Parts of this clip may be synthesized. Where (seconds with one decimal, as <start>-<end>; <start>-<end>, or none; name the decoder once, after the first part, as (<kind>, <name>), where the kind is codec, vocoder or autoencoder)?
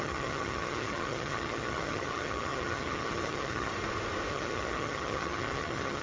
0.0-3.7 (vocoder, HiFi-GAN); 4.3-6.0